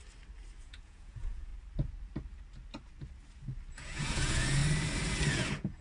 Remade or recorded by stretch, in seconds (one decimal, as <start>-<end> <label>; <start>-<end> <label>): 0.0-0.6 recorded; 0.6-1.5 remade; 1.5-3.7 recorded; 3.7-4.6 remade; 4.6-5.3 recorded; 5.3-5.8 remade